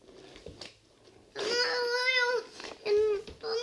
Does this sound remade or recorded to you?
recorded